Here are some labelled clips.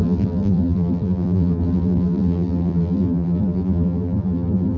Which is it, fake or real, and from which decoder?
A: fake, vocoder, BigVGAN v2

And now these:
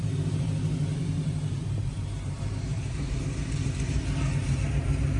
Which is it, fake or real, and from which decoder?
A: fake, vocoder, BigVGAN v2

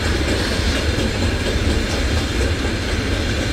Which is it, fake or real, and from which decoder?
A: real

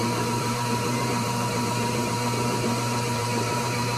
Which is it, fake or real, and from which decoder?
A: fake, vocoder, BigVGAN v2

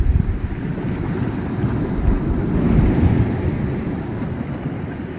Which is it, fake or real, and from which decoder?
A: real